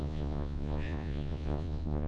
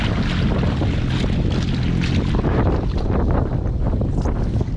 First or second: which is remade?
first